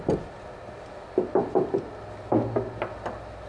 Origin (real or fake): real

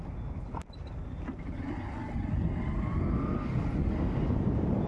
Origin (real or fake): real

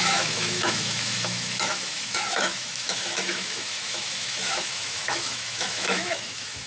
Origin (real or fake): fake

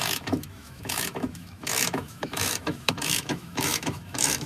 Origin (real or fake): fake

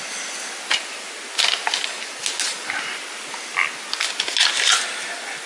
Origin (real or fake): real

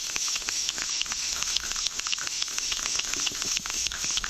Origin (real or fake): fake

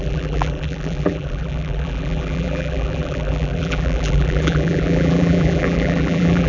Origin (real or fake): fake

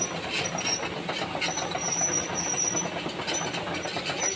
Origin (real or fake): real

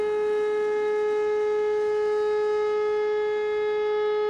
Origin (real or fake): real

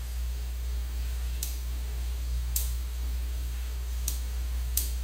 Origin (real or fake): fake